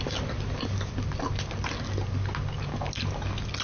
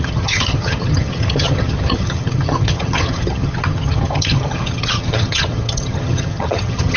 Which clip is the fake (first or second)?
second